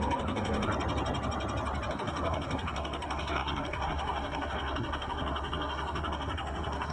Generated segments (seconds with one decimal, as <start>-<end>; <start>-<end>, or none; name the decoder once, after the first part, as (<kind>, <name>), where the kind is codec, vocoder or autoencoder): 0.0-0.7 (codec, SNAC); 1.9-6.9